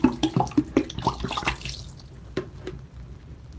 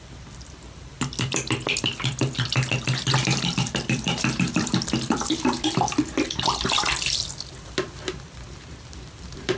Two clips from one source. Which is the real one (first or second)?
first